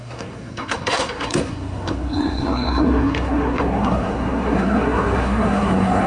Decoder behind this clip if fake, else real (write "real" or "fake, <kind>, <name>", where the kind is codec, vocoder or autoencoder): fake, codec, SNAC